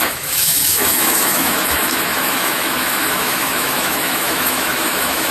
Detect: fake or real fake